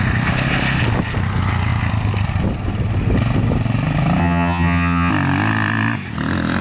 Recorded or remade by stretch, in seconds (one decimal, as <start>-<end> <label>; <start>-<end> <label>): 0.0-4.2 recorded; 4.2-5.1 remade; 5.1-6.6 recorded